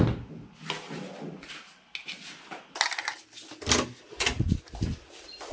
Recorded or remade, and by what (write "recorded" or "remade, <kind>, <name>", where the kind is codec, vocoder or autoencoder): recorded